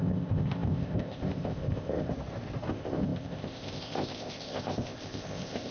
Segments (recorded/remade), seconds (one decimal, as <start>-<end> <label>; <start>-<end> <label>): 0.0-2.1 remade; 2.1-2.7 recorded; 2.7-5.7 remade